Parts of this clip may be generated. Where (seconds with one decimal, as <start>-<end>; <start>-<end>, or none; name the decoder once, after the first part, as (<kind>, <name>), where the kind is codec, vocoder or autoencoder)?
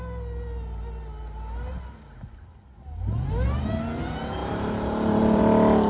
4.4-5.4 (vocoder, BigVGAN v2)